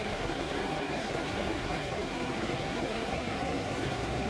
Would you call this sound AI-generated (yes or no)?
yes